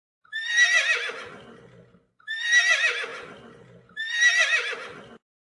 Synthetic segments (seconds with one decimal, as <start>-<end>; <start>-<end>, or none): none